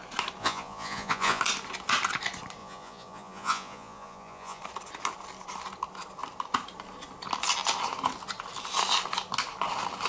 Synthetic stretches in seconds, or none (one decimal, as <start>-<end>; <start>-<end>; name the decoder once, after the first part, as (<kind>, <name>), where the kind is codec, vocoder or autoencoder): 0.4-1.4 (vocoder, Vocos); 2.6-4.6